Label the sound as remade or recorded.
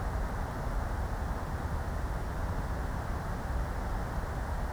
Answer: recorded